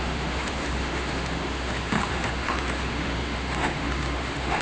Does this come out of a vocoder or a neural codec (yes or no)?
yes